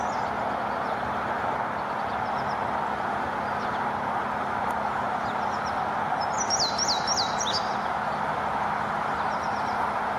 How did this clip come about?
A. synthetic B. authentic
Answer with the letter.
B